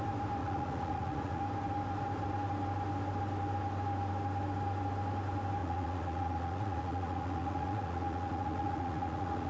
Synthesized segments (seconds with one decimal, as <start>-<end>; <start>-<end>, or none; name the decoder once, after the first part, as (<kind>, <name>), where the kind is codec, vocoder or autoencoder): 0.4-1.4 (vocoder, Vocos); 5.6-9.5